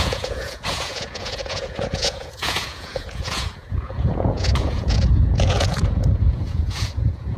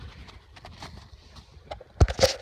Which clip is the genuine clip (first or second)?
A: second